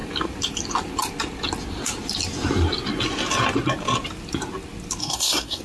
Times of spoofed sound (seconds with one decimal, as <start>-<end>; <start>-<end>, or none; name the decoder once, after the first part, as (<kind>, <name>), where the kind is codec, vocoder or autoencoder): 5.0-5.6 (codec, SNAC)